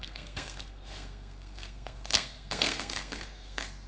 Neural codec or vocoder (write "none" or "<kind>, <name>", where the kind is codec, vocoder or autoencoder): codec, SNAC